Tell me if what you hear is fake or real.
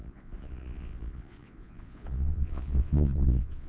fake